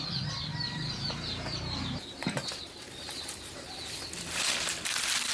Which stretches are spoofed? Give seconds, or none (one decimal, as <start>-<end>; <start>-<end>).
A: 0.5-3.7